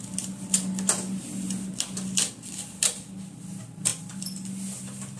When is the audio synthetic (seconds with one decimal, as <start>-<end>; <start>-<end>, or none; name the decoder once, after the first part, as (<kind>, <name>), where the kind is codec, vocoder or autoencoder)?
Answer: 0.0-5.2 (vocoder, BigVGAN v2)